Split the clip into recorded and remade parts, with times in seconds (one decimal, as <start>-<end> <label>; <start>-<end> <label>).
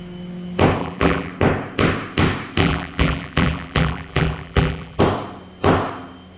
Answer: 0.0-0.8 recorded; 0.8-1.3 remade; 1.3-2.6 recorded; 2.6-5.0 remade; 5.0-6.4 recorded